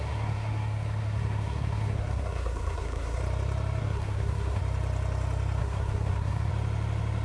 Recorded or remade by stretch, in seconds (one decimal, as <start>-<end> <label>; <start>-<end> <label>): 0.0-3.2 remade; 3.2-3.8 recorded; 3.8-4.6 remade; 4.6-5.6 recorded; 5.6-6.5 remade; 6.5-7.2 recorded